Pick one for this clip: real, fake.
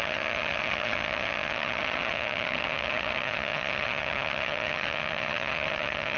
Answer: fake